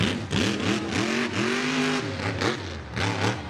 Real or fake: real